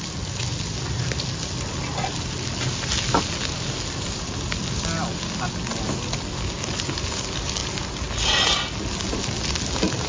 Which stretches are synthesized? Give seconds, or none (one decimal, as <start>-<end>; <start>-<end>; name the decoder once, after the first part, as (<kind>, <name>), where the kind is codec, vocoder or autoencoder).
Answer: none